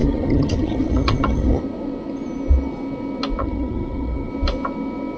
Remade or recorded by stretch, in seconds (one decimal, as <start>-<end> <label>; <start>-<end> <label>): 0.0-1.6 remade; 1.6-3.4 recorded; 3.4-4.3 remade; 4.3-5.2 recorded